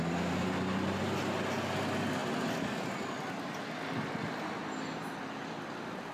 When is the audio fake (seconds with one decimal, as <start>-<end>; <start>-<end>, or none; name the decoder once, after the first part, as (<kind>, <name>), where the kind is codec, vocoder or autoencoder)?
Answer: none